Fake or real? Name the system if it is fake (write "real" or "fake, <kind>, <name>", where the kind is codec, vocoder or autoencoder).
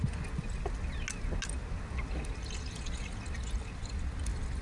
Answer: real